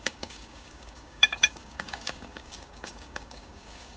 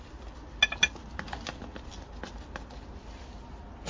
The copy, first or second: first